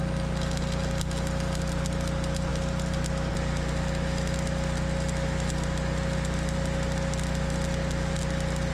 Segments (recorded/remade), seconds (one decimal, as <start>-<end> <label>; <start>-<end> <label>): 0.0-8.7 recorded